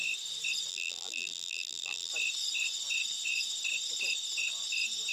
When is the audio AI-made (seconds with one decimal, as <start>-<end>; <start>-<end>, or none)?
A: 0.7-2.1